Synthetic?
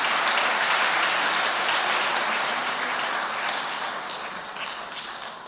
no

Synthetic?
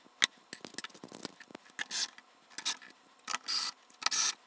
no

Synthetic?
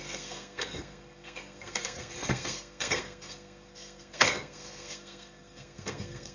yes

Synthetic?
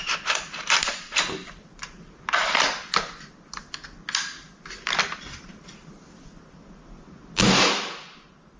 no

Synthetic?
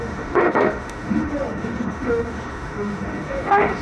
yes